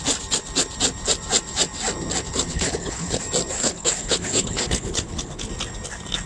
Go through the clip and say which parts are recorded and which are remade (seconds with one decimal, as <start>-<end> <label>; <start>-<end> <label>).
0.0-2.5 recorded; 2.5-3.2 remade; 3.2-3.6 recorded; 3.6-5.5 remade; 5.5-6.3 recorded